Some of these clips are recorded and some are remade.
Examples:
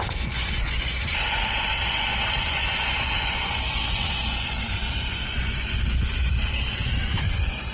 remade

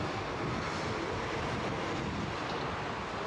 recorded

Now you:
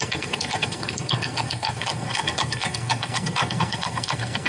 remade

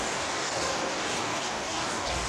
remade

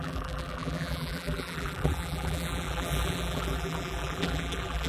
remade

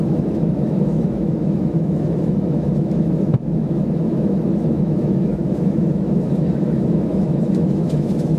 remade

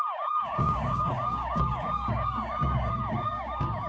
remade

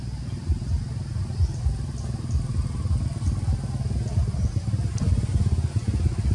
recorded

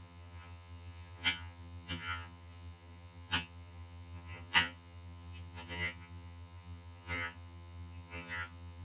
remade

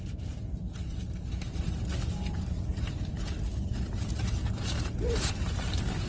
recorded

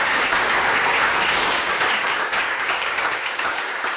remade